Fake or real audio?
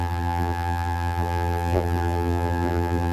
fake